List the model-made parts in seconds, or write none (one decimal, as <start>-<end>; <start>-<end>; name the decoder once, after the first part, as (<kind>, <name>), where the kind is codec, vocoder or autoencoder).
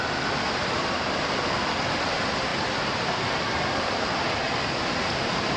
none